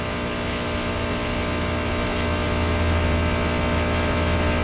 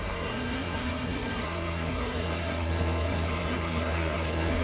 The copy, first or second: second